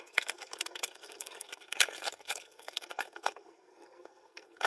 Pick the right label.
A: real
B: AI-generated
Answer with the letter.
B